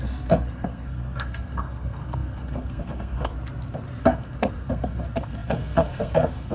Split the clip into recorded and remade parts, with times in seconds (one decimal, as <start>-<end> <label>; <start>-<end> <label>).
0.0-3.3 remade; 3.3-4.0 recorded; 4.0-6.5 remade